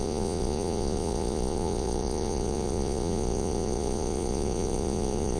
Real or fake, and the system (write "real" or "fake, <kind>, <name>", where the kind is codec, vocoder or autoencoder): fake, vocoder, Vocos